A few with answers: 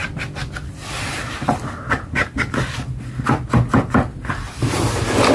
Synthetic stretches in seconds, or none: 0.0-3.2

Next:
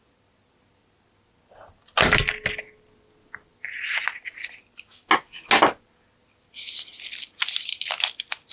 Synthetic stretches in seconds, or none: none

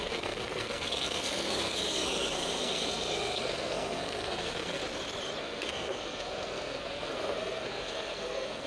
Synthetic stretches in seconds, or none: 0.0-4.8; 5.4-8.7

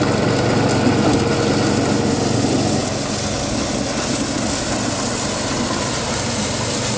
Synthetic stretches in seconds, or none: none